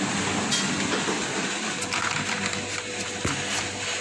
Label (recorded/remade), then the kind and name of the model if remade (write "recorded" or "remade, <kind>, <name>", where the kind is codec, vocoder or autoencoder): recorded